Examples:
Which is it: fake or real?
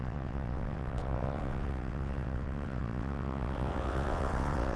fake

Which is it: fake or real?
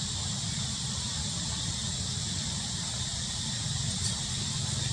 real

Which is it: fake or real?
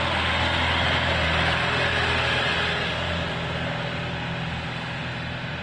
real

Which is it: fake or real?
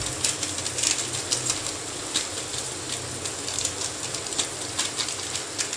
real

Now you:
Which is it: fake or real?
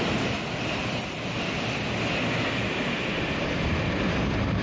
real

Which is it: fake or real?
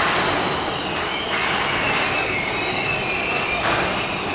real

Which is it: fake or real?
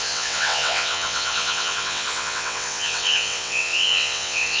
fake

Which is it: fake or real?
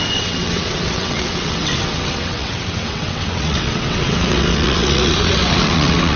fake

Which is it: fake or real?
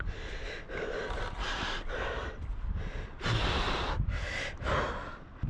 real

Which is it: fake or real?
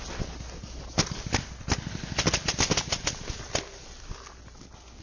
real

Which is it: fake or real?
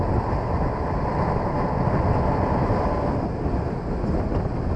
real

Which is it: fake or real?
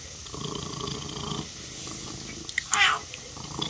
real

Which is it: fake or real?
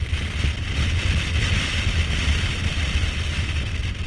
real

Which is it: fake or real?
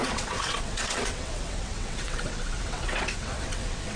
fake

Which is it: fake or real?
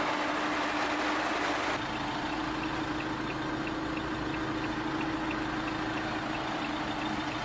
real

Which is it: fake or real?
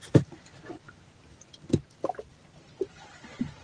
real